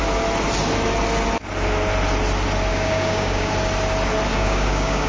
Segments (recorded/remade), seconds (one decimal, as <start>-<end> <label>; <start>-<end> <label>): 0.0-2.7 recorded; 2.7-3.5 remade; 3.5-4.3 recorded; 4.3-5.1 remade